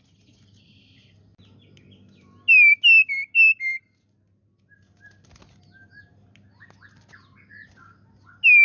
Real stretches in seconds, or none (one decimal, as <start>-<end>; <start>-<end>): 0.0-8.6